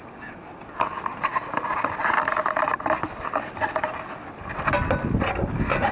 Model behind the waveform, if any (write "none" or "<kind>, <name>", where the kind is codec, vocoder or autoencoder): none